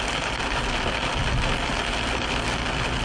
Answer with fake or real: real